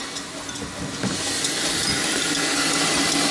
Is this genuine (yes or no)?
yes